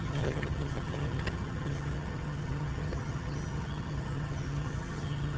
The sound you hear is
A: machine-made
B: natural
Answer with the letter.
A